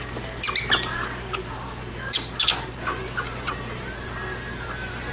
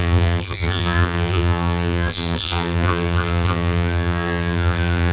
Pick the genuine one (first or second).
first